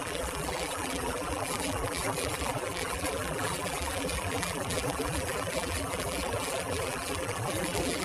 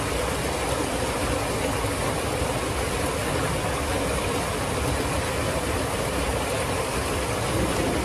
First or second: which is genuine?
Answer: second